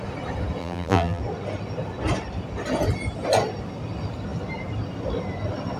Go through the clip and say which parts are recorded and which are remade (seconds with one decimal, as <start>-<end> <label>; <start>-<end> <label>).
0.0-0.6 recorded; 0.6-1.2 remade; 1.2-5.8 recorded